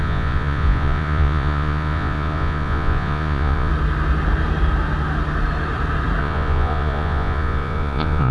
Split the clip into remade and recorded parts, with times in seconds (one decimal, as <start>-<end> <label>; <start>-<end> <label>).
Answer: 0.0-3.7 remade; 3.7-6.2 recorded; 6.2-8.3 remade